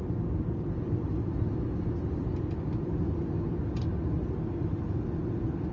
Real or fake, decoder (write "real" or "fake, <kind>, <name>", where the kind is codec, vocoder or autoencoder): real